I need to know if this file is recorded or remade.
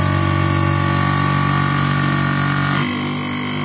recorded